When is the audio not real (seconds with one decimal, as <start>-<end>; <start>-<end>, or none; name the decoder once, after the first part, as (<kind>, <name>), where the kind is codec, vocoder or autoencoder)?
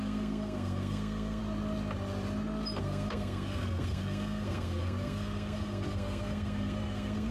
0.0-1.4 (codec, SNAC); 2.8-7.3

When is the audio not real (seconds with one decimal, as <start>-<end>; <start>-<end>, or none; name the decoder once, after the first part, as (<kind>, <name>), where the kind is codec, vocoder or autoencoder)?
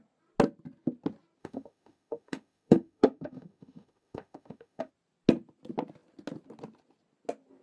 1.4-4.9 (autoencoder, DAC-VAE)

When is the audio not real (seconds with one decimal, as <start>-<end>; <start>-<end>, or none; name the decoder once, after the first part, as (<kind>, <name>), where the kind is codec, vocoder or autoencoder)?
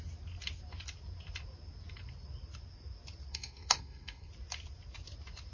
3.3-4.3 (codec, SNAC)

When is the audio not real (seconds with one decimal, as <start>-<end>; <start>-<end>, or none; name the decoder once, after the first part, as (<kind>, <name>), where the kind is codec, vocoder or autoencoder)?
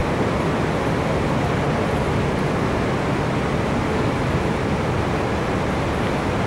none